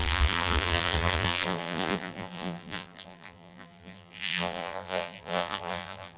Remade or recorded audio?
remade